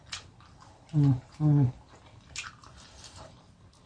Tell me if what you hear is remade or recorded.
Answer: recorded